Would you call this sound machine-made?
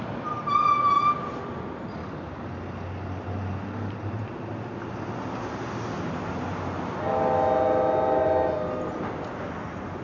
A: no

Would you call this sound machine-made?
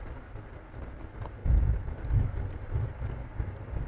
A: no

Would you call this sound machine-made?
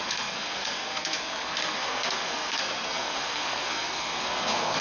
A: yes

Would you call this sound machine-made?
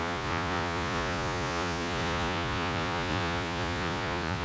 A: yes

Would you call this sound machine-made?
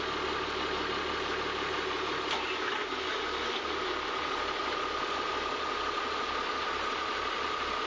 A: no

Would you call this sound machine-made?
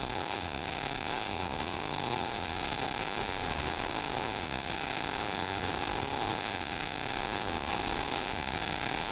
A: yes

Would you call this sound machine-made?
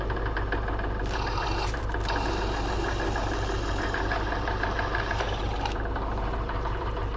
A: yes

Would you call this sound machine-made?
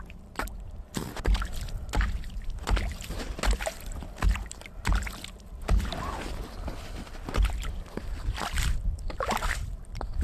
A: no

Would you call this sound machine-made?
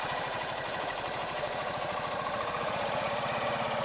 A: yes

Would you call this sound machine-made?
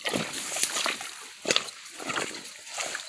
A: no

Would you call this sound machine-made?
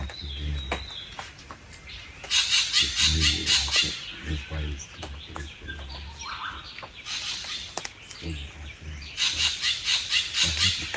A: no